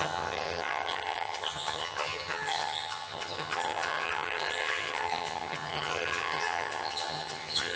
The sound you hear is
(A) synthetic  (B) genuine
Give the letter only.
A